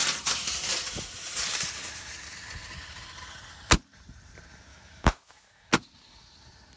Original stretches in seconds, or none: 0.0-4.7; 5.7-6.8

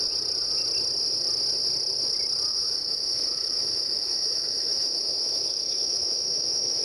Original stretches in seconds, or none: 0.0-2.5

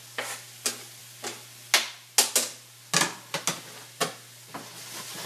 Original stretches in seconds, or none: 0.0-5.3

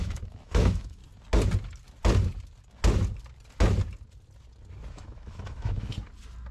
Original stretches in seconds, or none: 1.0-4.9; 5.9-6.5

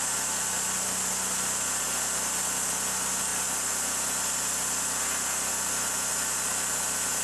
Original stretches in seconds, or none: 0.0-7.2

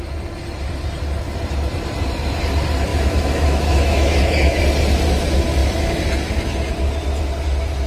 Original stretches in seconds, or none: 0.0-2.9; 4.6-7.9

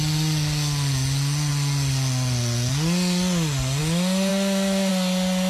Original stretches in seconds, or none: 0.0-4.3; 4.9-5.5

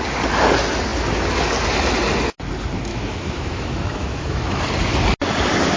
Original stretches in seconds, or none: 0.0-2.9; 4.6-5.8